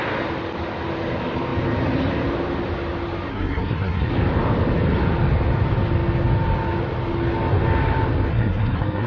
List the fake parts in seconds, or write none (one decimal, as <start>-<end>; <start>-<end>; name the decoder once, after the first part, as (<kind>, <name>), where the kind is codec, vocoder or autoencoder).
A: 3.3-4.1 (codec, SNAC); 8.3-9.1